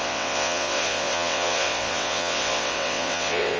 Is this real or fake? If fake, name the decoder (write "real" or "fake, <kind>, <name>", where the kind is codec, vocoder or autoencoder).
fake, vocoder, WaveNeXt